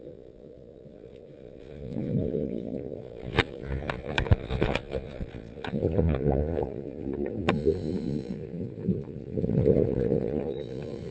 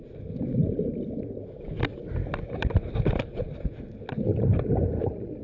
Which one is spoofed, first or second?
first